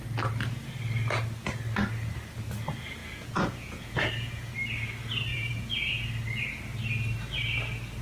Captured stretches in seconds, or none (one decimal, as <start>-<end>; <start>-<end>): 0.0-3.0; 4.5-5.3; 5.9-8.0